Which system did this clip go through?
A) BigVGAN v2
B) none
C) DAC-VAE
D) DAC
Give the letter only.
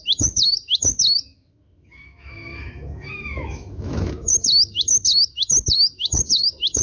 C